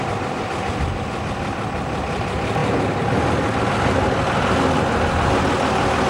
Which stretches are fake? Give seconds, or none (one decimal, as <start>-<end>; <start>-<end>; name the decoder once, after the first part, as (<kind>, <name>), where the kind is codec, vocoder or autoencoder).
none